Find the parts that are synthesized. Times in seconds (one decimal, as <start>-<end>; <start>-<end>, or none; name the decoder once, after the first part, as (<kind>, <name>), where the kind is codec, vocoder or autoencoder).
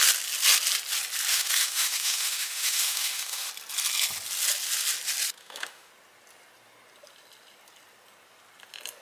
1.3-3.5 (autoencoder, DAC-VAE); 5.4-5.9